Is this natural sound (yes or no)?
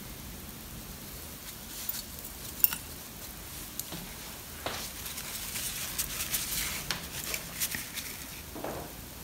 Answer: yes